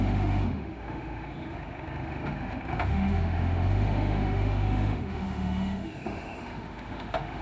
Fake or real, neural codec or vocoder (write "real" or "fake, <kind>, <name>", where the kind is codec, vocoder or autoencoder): fake, autoencoder, DAC-VAE